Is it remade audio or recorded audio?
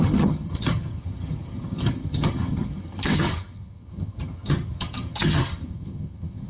remade